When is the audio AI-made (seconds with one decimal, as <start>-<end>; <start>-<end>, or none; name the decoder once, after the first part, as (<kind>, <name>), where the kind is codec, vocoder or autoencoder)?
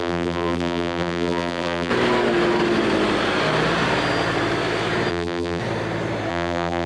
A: 0.0-1.9 (vocoder, BigVGAN v2); 5.1-5.6; 6.3-6.9